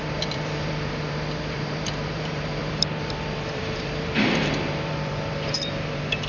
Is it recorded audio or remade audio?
remade